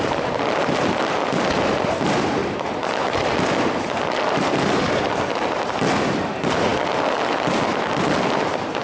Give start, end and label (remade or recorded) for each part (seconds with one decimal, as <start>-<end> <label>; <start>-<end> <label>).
0.0-8.8 recorded